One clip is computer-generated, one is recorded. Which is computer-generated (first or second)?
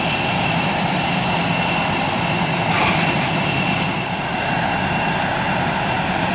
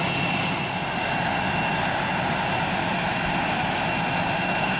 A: first